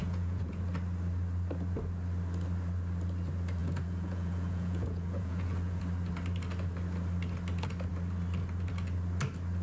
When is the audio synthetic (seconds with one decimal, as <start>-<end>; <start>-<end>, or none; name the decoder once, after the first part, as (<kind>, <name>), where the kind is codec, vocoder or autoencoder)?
0.0-0.6 (vocoder, Vocos); 3.6-5.8